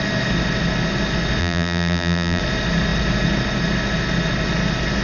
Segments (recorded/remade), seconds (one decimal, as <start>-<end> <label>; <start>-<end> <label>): 0.0-1.4 recorded; 1.4-2.4 remade; 2.4-5.0 recorded